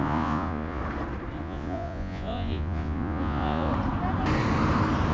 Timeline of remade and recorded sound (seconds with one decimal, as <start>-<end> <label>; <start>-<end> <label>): 0.0-0.8 remade; 0.8-1.4 recorded; 1.4-3.7 remade; 3.7-5.1 recorded